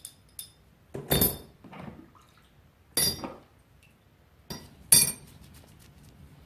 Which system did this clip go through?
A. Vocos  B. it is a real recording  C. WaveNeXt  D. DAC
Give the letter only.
B